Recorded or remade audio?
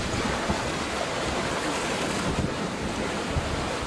recorded